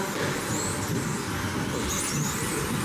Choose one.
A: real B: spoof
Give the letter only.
A